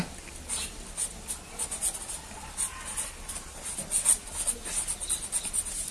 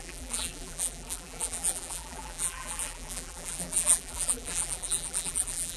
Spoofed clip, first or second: second